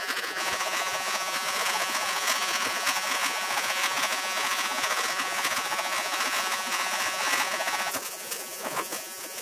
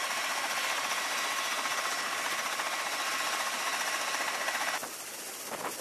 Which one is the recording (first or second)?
second